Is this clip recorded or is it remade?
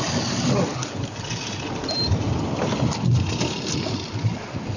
recorded